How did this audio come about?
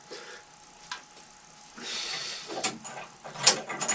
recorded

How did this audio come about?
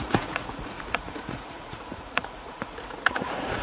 remade